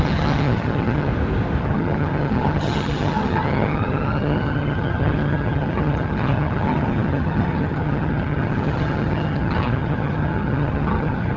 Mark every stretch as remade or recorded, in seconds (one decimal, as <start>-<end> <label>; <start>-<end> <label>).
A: 0.0-1.1 remade; 1.1-1.6 recorded; 1.6-11.4 remade